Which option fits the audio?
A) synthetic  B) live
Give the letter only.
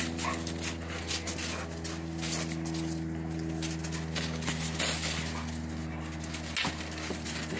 B